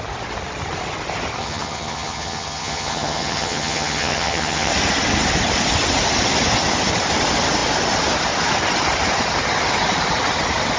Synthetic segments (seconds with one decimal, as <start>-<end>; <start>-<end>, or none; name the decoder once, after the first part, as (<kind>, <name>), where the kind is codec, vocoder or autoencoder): 1.4-4.7 (vocoder, HiFi-GAN)

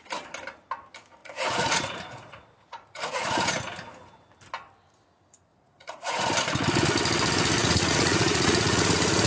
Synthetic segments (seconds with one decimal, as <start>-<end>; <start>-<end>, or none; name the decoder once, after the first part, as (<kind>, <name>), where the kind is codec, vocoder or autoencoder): 1.2-3.5 (vocoder, Vocos); 5.5-6.3; 7.6-9.3

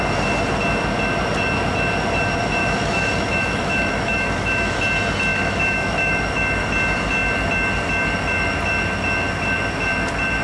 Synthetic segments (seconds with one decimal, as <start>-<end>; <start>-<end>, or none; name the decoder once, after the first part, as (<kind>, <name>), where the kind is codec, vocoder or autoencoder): 2.6-4.8 (autoencoder, DAC-VAE); 5.3-6.4